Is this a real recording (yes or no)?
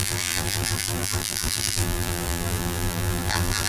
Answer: no